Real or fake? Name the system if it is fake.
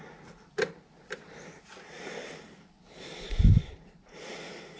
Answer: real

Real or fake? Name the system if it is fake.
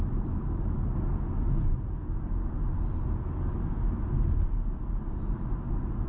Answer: real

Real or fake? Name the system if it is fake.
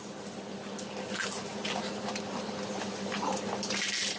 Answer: real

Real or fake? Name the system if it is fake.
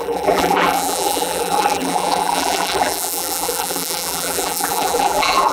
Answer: fake, vocoder, BigVGAN v2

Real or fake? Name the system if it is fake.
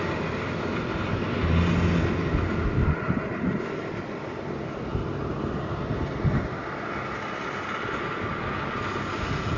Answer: real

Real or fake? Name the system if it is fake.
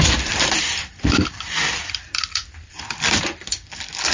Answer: fake, vocoder, BigVGAN v2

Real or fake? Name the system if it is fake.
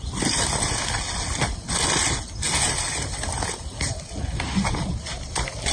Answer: real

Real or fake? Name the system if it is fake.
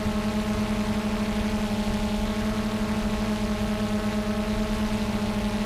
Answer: real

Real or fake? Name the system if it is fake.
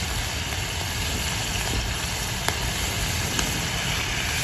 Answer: real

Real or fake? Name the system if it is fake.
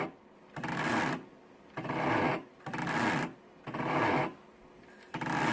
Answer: real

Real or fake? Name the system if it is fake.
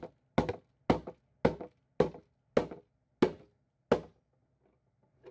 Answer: real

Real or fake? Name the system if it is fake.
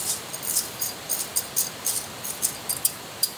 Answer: fake, vocoder, BigVGAN v2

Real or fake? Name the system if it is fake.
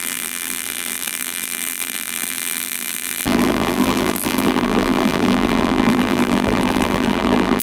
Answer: fake, vocoder, BigVGAN v2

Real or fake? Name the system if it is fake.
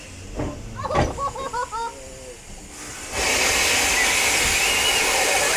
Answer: real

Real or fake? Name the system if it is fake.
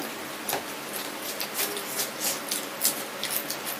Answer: real